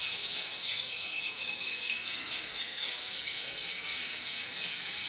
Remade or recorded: remade